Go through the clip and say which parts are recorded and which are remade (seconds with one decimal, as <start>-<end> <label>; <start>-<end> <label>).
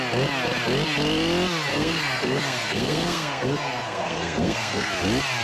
0.0-1.7 recorded; 1.7-4.9 remade; 4.9-5.4 recorded